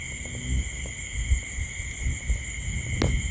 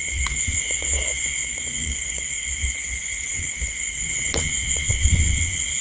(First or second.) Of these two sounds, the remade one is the second